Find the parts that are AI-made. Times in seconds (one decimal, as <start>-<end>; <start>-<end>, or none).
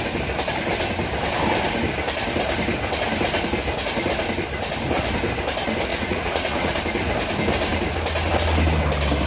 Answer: 5.9-6.7